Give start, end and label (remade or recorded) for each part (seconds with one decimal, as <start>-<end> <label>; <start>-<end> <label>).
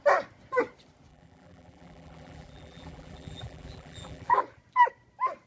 0.0-1.1 recorded; 1.1-4.4 remade; 4.4-5.5 recorded